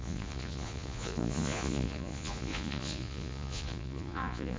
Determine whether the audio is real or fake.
fake